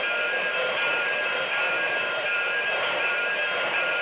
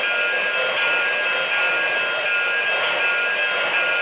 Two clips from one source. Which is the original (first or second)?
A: second